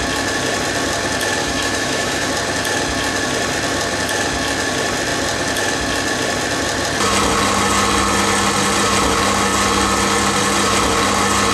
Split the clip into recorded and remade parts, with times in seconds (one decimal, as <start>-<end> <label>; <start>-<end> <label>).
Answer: 0.0-1.4 recorded; 1.4-2.3 remade; 2.3-11.5 recorded